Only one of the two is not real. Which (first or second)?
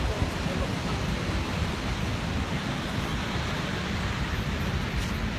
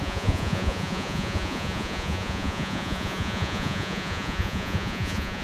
second